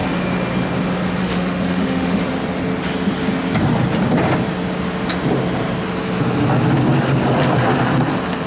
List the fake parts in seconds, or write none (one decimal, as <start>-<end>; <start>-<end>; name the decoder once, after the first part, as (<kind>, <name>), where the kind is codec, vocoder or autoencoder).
1.2-2.2 (autoencoder, DAC-VAE)